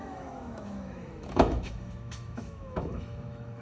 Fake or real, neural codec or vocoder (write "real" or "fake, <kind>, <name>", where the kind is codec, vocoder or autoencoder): fake, autoencoder, DAC-VAE